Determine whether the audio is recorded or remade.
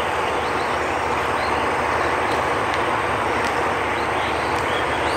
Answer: remade